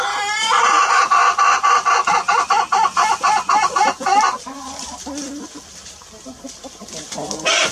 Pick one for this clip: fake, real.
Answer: real